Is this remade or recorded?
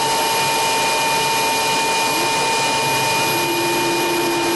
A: recorded